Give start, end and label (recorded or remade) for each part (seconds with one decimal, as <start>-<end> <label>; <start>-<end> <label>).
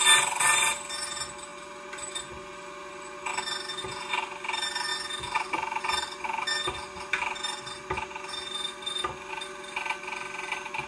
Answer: 0.0-10.9 recorded